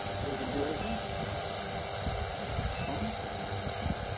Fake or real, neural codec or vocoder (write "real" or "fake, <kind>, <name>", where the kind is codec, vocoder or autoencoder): real